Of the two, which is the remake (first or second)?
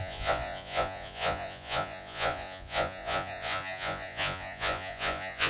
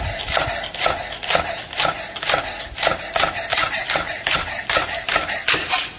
first